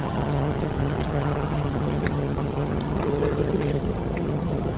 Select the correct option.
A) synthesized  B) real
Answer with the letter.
A